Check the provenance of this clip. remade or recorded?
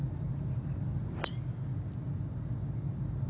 recorded